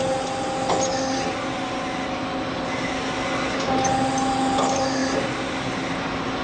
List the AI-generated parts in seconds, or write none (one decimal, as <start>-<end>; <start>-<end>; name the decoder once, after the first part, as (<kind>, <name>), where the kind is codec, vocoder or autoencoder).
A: none